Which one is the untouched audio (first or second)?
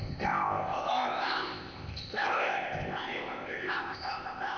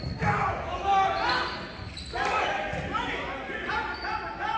second